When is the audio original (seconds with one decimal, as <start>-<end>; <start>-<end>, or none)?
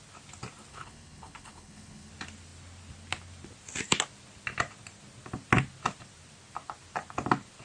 0.0-0.7; 2.1-7.6